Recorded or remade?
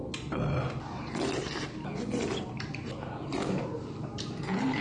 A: recorded